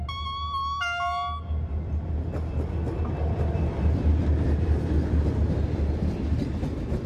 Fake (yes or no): no